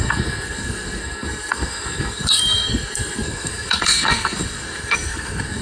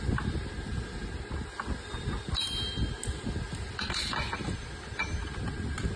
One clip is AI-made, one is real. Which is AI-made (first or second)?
first